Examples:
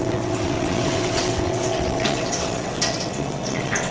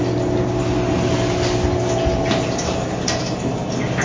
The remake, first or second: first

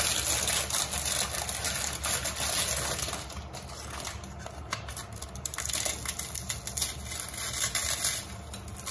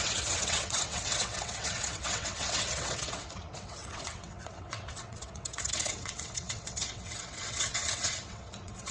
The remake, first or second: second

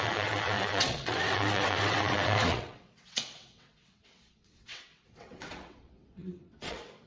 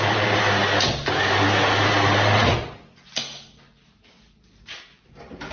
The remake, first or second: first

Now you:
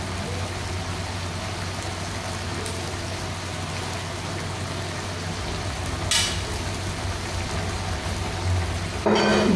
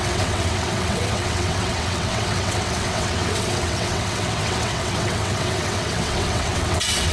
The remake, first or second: second